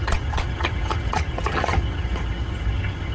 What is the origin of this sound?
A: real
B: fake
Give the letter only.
B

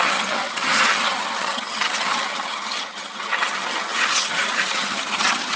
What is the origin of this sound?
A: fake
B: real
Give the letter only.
A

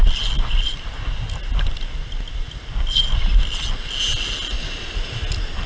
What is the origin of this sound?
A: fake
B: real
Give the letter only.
B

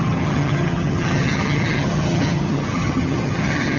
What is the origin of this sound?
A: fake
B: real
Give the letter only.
A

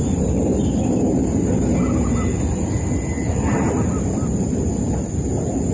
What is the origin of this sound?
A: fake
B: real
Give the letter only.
B